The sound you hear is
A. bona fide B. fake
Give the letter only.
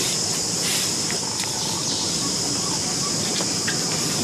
B